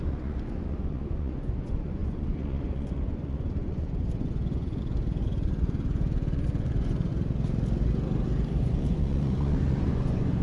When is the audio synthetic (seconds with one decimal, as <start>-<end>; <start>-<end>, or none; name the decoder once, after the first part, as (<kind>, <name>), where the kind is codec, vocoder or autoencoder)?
0.0-7.1 (vocoder, Vocos); 8.6-10.4

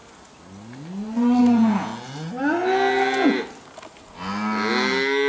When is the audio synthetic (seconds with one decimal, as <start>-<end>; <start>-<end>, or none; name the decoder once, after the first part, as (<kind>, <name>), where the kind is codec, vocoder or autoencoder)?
1.4-1.9 (vocoder, Vocos)

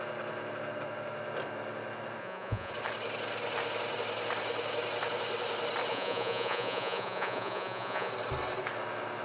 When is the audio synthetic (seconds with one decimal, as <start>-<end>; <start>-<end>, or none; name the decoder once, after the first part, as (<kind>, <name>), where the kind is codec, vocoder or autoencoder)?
2.2-2.7 (vocoder, Vocos); 5.9-8.1

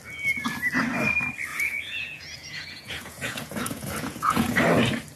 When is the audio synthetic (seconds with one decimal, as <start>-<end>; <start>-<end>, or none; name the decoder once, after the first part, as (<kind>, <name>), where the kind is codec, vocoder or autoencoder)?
1.5-4.6 (vocoder, Vocos)

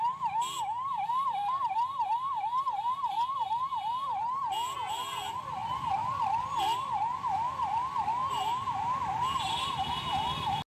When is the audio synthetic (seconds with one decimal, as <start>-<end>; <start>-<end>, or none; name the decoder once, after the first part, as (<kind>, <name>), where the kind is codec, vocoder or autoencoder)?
none